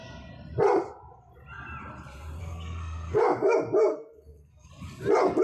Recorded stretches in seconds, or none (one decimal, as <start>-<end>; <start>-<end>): 0.0-2.4; 3.2-3.9; 4.7-5.4